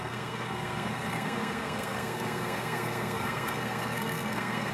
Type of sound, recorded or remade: remade